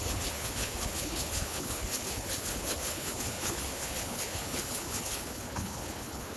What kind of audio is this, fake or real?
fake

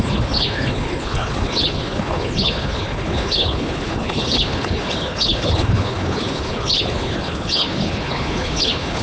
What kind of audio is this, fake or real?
fake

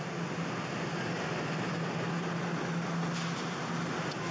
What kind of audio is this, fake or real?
real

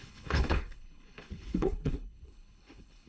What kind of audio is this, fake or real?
fake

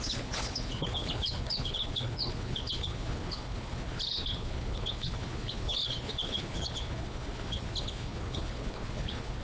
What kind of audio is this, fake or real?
fake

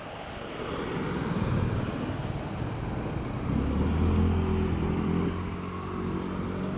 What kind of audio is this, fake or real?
real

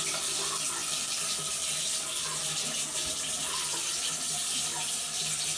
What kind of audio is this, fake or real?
real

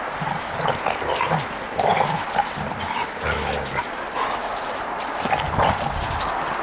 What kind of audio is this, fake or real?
real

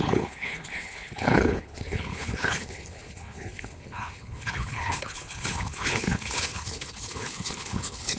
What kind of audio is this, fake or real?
fake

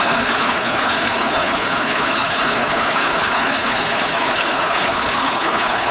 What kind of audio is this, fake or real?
fake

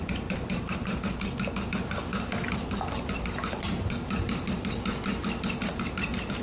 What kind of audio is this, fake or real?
real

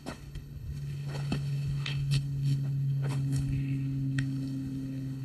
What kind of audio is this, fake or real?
fake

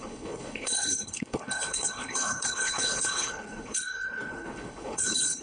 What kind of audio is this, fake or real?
fake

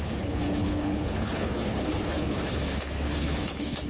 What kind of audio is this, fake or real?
fake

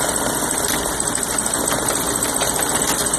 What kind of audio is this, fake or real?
real